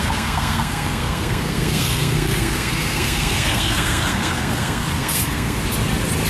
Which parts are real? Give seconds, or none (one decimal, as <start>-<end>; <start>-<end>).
5.6-6.3